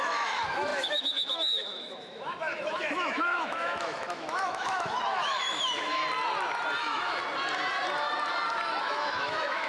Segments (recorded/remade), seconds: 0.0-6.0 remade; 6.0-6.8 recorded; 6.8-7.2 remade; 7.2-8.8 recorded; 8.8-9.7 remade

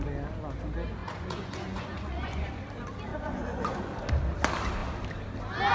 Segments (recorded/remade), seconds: 0.0-1.0 recorded; 1.0-2.6 remade; 2.6-3.1 recorded; 3.1-4.0 remade; 4.0-5.7 recorded